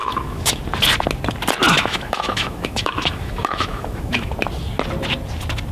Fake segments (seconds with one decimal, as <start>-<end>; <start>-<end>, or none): 0.0-0.6; 1.7-4.3